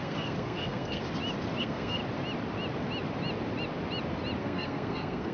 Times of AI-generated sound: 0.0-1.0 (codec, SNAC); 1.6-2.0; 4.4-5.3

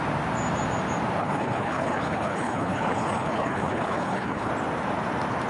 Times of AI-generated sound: 1.2-4.5 (codec, HILCodec)

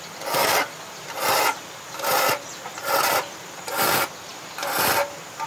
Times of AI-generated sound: none

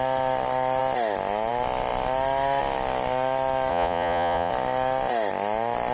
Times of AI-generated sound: 3.7-4.5 (vocoder, Vocos)